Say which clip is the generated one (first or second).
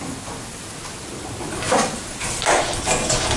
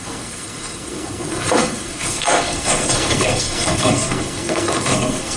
second